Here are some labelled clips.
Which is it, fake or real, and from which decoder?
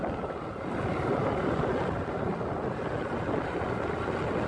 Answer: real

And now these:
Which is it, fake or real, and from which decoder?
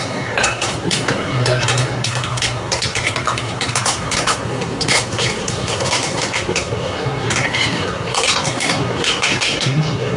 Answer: fake, codec, SNAC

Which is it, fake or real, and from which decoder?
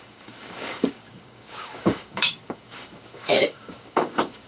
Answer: fake, codec, DAC